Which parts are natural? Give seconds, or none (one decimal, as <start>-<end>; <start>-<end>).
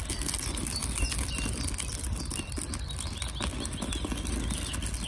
0.0-5.1